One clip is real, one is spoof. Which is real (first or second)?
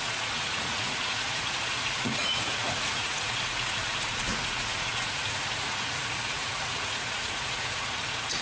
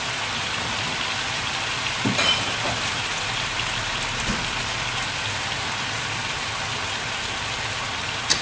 second